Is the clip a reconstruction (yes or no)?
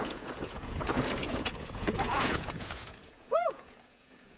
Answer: yes